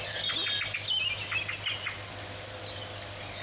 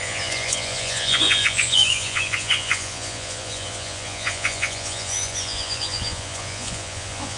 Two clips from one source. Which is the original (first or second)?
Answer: first